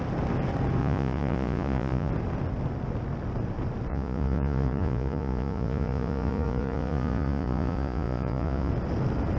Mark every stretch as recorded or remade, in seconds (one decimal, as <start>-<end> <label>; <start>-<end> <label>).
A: 0.0-0.8 recorded; 0.8-2.1 remade; 2.1-3.9 recorded; 3.9-8.7 remade; 8.7-9.4 recorded